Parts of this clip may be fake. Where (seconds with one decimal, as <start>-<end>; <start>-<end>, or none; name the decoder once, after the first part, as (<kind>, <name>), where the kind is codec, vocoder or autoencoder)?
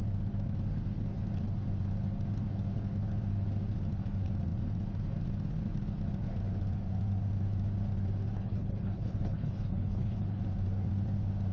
8.3-10.4 (codec, HILCodec)